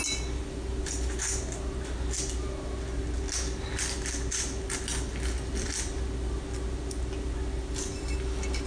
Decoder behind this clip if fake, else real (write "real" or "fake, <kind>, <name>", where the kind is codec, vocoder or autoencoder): real